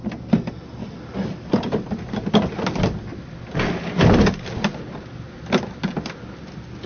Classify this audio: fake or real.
real